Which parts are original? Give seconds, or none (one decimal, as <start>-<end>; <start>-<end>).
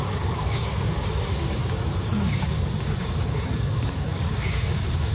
none